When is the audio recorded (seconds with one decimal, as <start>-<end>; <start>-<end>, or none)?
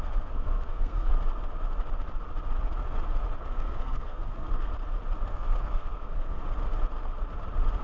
1.1-3.4; 4.7-5.3; 6.4-7.8